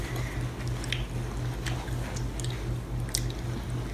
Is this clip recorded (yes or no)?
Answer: yes